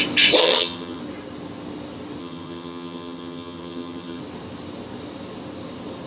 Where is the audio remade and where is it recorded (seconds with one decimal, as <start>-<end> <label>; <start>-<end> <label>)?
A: 0.0-0.4 recorded; 0.4-1.0 remade; 1.0-2.2 recorded; 2.2-4.2 remade; 4.2-6.1 recorded